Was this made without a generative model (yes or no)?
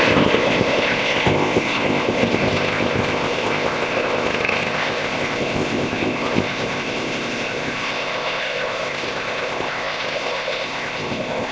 no